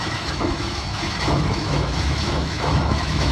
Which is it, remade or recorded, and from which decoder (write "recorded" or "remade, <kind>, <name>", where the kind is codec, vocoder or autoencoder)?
remade, autoencoder, DAC-VAE